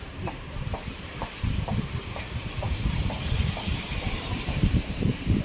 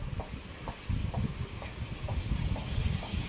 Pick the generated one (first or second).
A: first